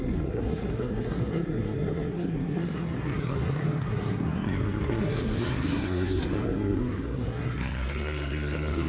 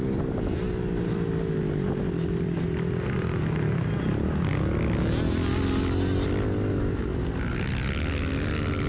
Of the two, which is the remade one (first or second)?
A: first